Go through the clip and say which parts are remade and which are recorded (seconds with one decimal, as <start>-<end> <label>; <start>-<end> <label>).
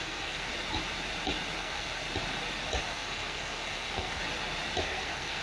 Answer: 0.0-0.5 remade; 0.5-1.6 recorded; 1.6-2.0 remade; 2.0-2.8 recorded; 2.8-4.2 remade; 4.2-4.8 recorded; 4.8-5.4 remade